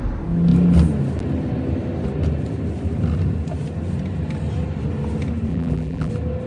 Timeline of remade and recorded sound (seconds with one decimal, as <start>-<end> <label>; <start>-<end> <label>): 0.0-5.5 recorded; 5.5-6.1 remade; 6.1-6.5 recorded